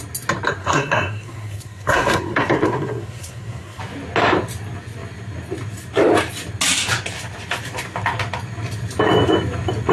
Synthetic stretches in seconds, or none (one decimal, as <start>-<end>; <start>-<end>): 0.6-3.8